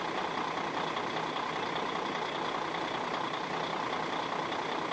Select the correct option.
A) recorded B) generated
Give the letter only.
A